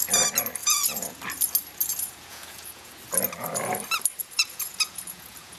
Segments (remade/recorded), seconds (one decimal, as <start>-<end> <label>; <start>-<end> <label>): 0.0-0.6 recorded; 0.6-1.2 remade; 1.2-1.9 recorded; 1.9-2.9 remade; 2.9-4.2 recorded; 4.2-5.6 remade